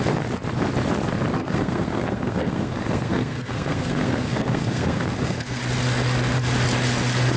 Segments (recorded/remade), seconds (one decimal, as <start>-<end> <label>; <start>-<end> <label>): 0.0-1.4 recorded; 1.4-5.6 remade; 5.6-7.4 recorded